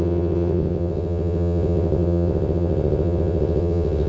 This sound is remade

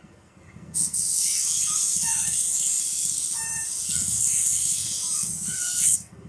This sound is remade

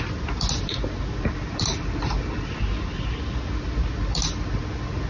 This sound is recorded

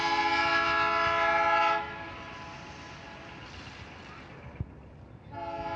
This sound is recorded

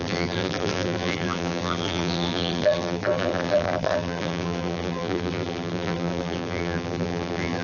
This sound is remade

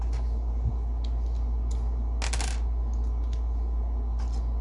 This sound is recorded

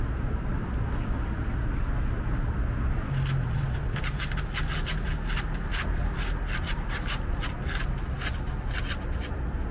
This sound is recorded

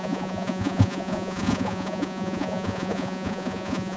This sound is remade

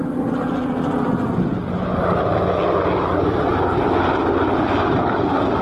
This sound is recorded